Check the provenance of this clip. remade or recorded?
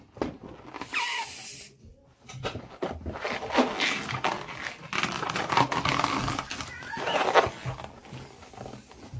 recorded